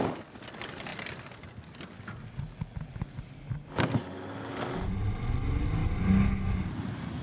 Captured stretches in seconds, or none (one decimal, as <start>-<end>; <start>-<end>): 0.0-7.2